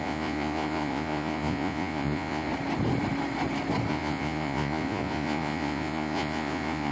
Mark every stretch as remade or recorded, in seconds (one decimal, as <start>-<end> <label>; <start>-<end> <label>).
0.0-2.5 remade; 2.5-3.9 recorded; 3.9-6.9 remade